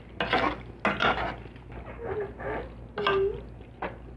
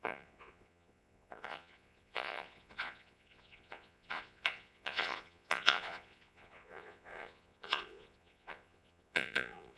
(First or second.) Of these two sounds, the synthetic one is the second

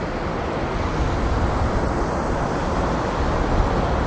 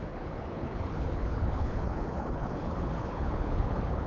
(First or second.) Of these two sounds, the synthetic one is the second